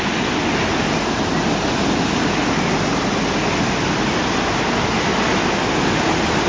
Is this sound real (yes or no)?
yes